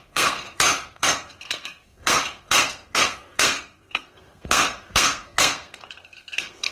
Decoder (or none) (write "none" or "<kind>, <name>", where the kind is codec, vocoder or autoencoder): codec, SNAC